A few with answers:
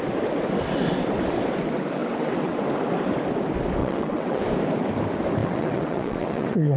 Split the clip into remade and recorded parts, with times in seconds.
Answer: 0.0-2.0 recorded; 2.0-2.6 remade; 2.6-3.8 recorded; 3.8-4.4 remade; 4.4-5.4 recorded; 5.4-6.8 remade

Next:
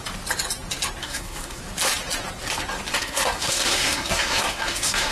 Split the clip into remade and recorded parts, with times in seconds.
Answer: 0.0-1.0 recorded; 1.0-1.6 remade; 1.6-3.0 recorded; 3.0-5.1 remade

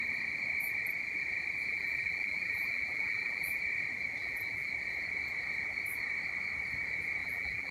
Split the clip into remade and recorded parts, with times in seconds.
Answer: 0.0-1.7 recorded; 1.7-3.6 remade; 3.6-4.2 recorded; 4.2-4.7 remade; 4.7-7.2 recorded; 7.2-7.7 remade

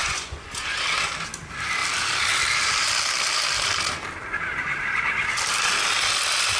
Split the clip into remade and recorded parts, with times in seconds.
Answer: 0.0-0.8 remade; 0.8-6.6 recorded